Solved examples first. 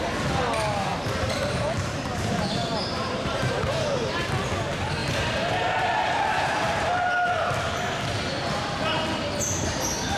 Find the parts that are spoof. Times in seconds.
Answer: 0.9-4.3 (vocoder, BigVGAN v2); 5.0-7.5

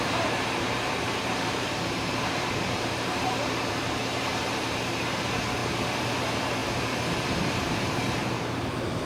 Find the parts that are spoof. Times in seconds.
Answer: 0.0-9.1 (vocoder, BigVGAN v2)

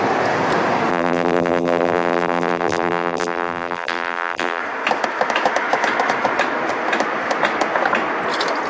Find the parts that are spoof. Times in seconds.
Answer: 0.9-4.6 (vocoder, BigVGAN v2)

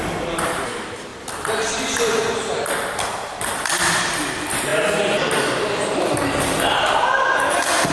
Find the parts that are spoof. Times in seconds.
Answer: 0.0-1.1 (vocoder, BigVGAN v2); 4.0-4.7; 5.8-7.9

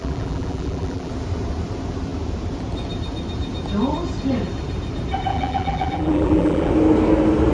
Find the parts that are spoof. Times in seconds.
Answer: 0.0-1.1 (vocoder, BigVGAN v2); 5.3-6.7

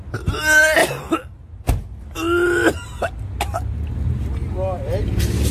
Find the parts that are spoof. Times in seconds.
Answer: none